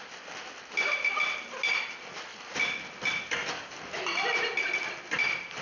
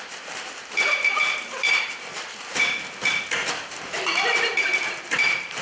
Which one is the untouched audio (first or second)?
first